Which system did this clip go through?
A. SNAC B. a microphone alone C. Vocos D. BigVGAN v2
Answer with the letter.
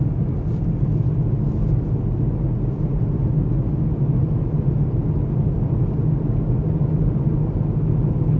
B